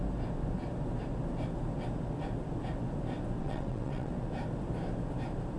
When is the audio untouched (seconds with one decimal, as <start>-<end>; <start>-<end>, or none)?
0.0-3.4; 4.1-5.6